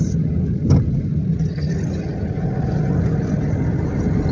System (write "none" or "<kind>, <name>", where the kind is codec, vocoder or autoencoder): none